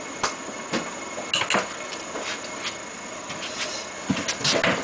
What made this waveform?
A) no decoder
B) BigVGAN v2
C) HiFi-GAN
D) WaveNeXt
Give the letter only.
A